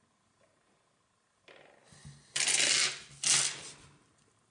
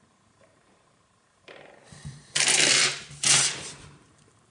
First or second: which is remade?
second